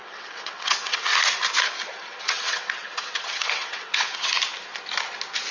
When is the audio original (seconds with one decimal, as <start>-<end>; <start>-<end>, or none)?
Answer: 1.1-1.9; 4.3-5.5